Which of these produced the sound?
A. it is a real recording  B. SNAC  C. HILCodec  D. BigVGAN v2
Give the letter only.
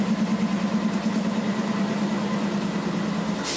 A